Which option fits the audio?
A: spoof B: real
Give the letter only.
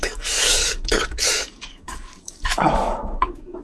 A